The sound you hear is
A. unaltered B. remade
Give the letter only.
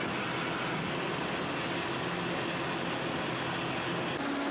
A